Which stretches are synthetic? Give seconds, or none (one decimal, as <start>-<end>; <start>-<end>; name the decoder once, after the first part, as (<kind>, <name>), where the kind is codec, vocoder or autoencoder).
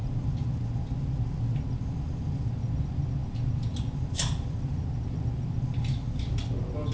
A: none